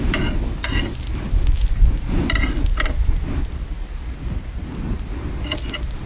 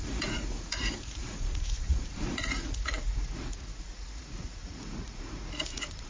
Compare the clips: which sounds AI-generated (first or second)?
second